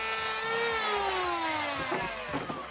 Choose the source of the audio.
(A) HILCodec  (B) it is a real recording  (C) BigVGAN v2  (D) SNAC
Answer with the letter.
B